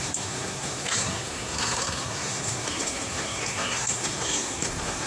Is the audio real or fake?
fake